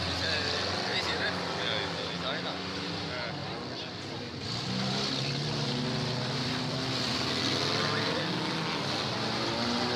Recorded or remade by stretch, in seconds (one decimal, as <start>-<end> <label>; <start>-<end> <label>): 0.0-0.9 recorded; 0.9-1.4 remade; 1.4-10.0 recorded